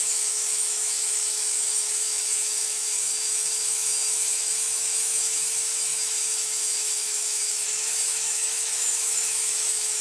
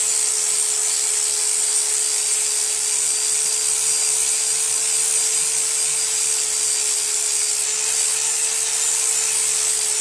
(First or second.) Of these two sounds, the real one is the second